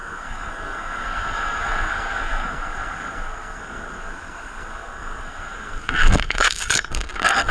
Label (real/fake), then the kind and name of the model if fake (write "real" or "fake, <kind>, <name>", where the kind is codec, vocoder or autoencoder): fake, codec, SNAC